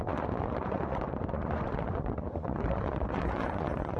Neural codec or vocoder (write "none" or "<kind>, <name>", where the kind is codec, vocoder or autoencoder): vocoder, Vocos